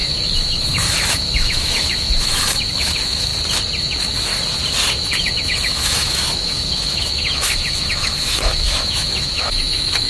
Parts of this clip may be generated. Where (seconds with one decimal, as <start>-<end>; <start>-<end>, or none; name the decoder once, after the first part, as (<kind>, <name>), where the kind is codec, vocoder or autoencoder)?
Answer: 0.0-3.3 (autoencoder, DAC-VAE); 3.8-4.3; 4.9-10.1

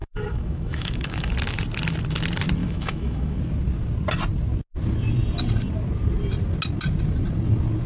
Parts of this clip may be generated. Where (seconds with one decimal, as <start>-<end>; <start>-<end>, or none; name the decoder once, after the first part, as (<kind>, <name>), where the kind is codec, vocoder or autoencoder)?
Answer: 0.0-1.3 (autoencoder, DAC-VAE); 2.6-3.4

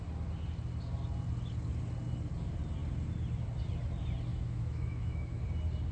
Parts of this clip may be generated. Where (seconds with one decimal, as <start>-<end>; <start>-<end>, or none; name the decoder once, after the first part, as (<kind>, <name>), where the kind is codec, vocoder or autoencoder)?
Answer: 4.3-5.4 (autoencoder, DAC-VAE)

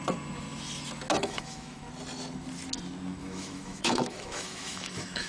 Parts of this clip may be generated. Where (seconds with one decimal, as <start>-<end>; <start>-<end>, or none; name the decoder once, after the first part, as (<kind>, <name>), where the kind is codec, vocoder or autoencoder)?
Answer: 1.2-1.8 (autoencoder, DAC-VAE); 3.2-5.3

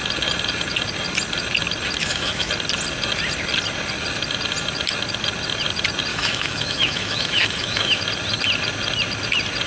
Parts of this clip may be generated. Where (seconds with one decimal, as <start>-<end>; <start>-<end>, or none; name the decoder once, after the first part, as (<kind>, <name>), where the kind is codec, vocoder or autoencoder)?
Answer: 2.0-2.5 (autoencoder, DAC-VAE); 6.1-8.0

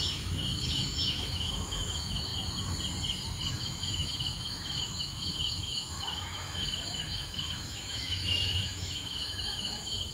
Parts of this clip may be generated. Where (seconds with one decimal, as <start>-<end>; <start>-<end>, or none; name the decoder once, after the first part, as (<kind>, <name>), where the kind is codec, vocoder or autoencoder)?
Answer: 0.0-2.3 (autoencoder, DAC-VAE); 3.5-10.1

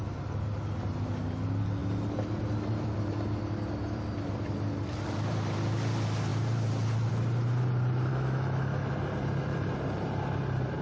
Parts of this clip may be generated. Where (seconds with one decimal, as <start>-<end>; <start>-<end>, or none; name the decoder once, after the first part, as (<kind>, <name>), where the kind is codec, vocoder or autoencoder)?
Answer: 8.1-8.9 (autoencoder, DAC-VAE)

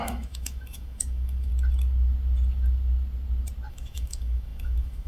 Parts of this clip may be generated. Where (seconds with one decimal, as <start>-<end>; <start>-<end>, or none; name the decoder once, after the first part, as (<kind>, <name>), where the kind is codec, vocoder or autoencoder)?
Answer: 0.0-1.5 (autoencoder, DAC-VAE); 3.7-5.1